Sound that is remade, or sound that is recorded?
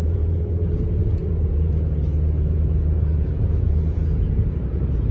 remade